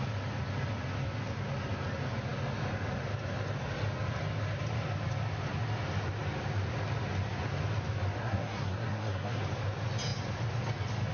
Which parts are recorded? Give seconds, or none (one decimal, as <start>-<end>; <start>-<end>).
0.0-8.2; 9.4-11.1